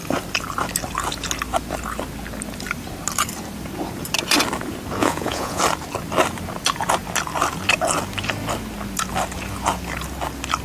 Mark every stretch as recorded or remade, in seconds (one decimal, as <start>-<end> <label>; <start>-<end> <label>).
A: 0.0-5.0 recorded; 5.0-5.6 remade; 5.6-10.6 recorded